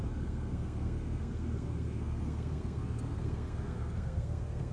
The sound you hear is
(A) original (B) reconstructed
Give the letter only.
B